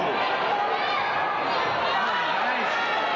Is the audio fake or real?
real